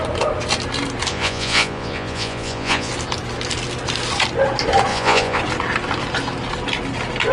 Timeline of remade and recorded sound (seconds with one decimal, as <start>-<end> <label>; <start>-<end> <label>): 0.0-1.1 recorded; 1.1-2.9 remade; 2.9-4.9 recorded; 4.9-5.4 remade; 5.4-7.3 recorded